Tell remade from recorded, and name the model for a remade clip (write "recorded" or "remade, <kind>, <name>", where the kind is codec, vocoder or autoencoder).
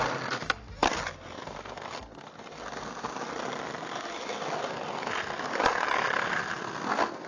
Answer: recorded